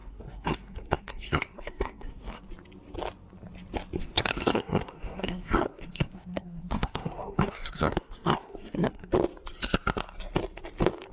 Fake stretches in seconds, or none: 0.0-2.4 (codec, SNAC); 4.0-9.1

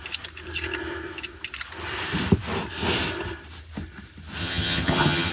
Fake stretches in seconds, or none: 4.4-5.3 (vocoder, HiFi-GAN)